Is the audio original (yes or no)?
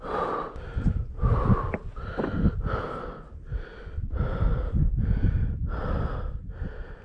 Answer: yes